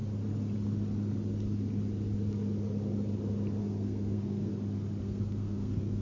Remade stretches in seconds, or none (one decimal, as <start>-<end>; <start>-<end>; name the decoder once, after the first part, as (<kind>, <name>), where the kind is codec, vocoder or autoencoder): 3.6-4.5 (codec, SNAC); 5.0-6.0